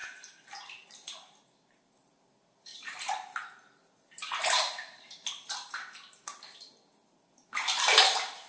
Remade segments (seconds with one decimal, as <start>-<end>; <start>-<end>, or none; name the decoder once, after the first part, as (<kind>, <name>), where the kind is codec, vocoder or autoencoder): none